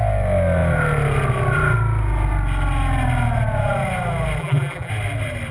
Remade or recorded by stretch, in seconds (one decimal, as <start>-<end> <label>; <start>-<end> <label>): 0.0-4.4 recorded; 4.4-4.9 remade; 4.9-5.5 recorded